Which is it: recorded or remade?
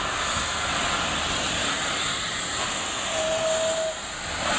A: recorded